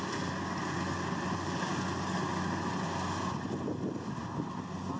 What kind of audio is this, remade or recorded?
recorded